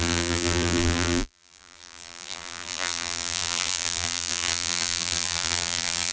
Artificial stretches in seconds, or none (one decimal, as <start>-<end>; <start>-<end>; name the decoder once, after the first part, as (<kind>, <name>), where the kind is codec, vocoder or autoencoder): 0.0-6.1 (vocoder, BigVGAN v2)